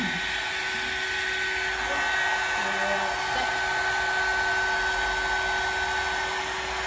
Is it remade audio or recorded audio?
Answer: recorded